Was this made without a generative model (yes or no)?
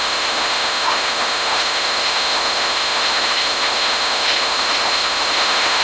no